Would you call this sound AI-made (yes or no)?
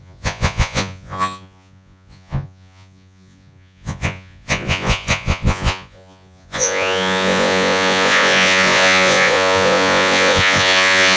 yes